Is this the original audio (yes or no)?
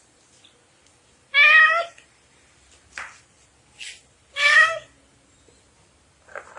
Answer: yes